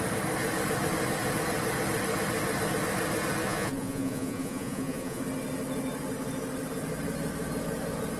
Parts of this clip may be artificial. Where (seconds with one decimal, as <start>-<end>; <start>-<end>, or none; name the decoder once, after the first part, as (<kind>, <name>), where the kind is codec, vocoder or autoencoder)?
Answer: 3.4-5.2 (vocoder, Vocos)